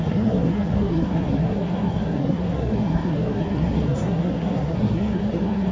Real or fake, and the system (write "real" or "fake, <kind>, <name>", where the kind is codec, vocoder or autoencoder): fake, codec, SNAC